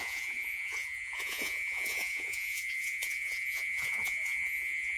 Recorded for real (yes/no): no